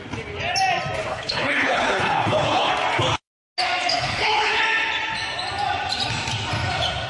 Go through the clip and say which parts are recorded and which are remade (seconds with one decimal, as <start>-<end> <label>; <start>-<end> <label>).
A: 0.0-1.1 recorded; 1.1-2.7 remade; 2.7-3.9 recorded; 3.9-4.6 remade; 4.6-7.1 recorded